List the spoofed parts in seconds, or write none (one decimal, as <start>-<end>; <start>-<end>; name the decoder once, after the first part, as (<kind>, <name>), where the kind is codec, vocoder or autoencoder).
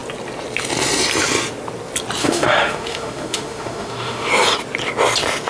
2.2-4.3 (autoencoder, DAC-VAE)